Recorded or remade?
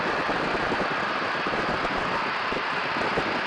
recorded